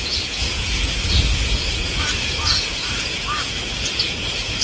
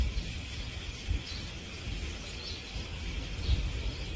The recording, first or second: second